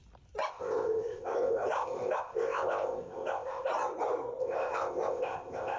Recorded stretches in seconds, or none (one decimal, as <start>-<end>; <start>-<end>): 0.0-0.5; 3.7-4.4